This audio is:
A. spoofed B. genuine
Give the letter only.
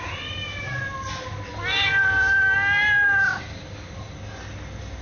B